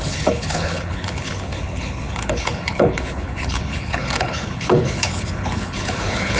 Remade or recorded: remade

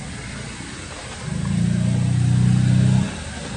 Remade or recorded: recorded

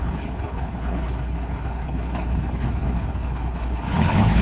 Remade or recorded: remade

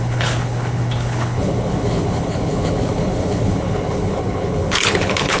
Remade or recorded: remade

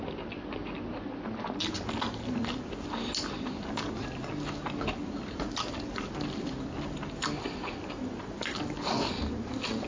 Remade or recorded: recorded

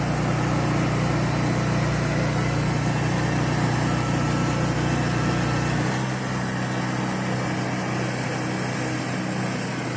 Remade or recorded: recorded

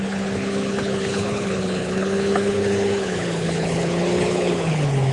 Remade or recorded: remade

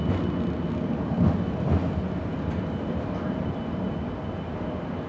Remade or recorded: recorded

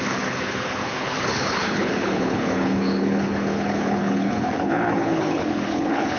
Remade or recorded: remade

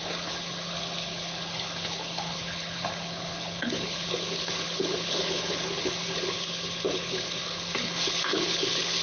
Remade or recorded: remade